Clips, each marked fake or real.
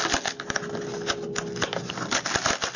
real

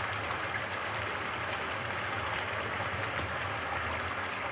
real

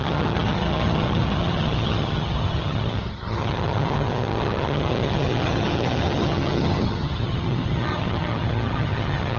fake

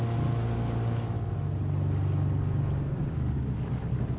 real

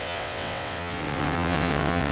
fake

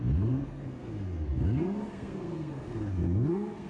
fake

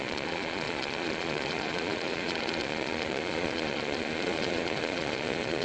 fake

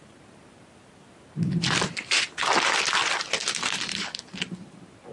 real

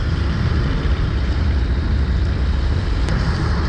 fake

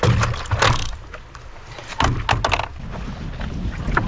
real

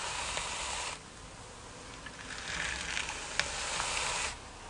real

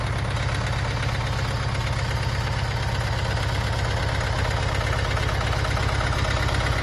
real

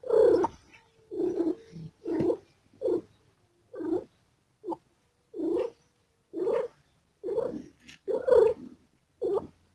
real